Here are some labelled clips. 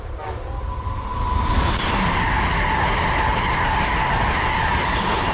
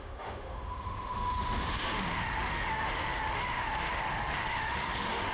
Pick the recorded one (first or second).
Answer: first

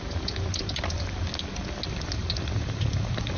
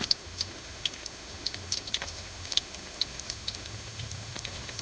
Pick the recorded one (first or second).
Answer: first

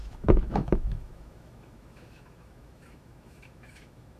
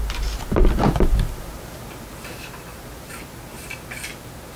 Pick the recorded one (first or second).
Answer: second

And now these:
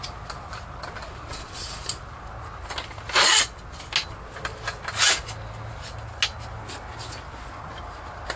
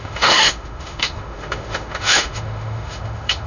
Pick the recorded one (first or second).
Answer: first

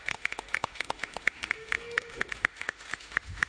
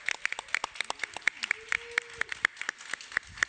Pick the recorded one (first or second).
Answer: second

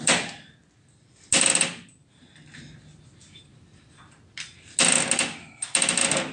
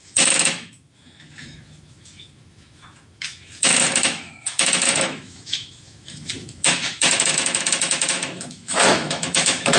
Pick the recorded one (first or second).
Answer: first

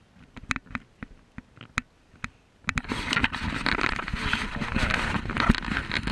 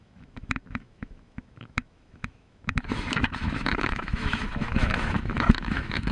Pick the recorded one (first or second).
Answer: first